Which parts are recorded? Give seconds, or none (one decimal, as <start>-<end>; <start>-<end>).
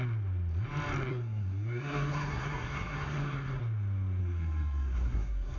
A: 0.0-1.1; 3.6-4.2